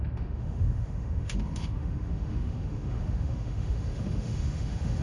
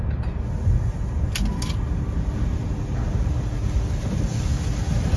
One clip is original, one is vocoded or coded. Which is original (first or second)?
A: second